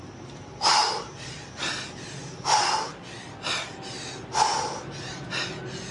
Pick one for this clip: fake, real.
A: real